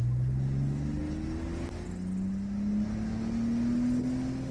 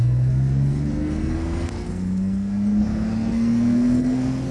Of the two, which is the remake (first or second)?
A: second